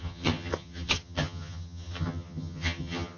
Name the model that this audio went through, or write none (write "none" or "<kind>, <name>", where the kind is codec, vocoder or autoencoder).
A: vocoder, HiFi-GAN